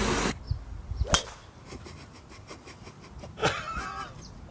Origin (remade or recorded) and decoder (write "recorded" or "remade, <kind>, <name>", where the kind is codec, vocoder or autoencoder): recorded